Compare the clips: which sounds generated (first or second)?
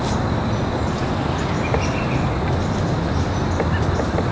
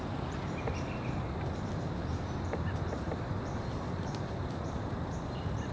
second